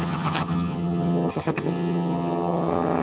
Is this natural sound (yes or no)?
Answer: no